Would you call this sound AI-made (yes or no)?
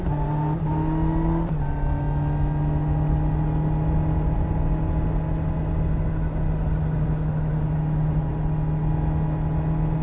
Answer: no